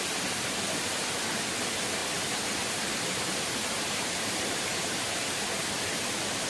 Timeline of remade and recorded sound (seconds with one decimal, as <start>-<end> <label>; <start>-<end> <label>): 0.0-2.0 recorded; 2.0-5.7 remade; 5.7-6.5 recorded